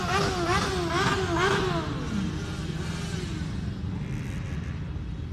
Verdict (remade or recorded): recorded